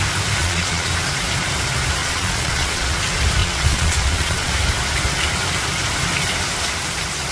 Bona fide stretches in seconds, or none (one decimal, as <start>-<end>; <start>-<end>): 0.0-0.4; 0.9-2.0; 3.0-3.4; 4.5-7.3